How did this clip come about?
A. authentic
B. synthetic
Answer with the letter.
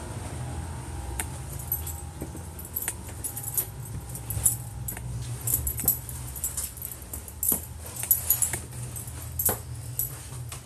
A